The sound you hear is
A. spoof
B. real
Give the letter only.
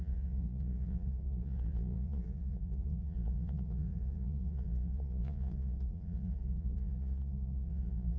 A